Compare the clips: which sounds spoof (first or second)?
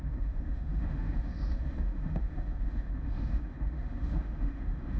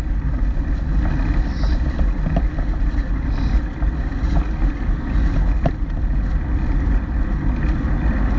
first